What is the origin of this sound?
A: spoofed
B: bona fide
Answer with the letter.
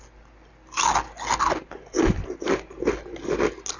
B